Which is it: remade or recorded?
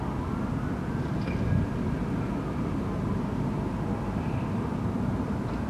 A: recorded